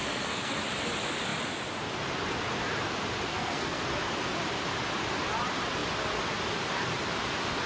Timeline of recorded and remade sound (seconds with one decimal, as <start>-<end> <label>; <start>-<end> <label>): 0.0-0.6 remade; 0.6-3.3 recorded; 3.3-3.8 remade; 3.8-7.7 recorded